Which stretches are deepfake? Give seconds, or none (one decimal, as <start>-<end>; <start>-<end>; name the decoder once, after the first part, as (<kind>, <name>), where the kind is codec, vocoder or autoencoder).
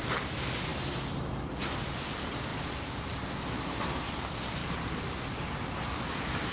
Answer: 0.0-2.5 (vocoder, BigVGAN v2); 3.1-4.6; 5.9-6.5